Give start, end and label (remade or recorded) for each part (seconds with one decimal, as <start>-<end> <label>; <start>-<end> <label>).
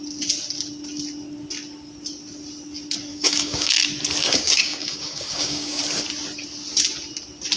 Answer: 0.0-3.1 recorded; 3.1-3.8 remade; 3.8-4.2 recorded; 4.2-5.8 remade; 5.8-7.6 recorded